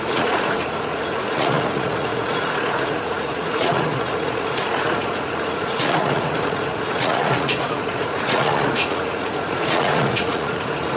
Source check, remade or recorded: remade